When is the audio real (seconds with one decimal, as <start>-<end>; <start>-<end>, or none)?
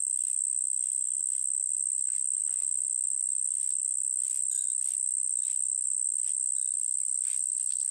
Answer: 0.0-7.9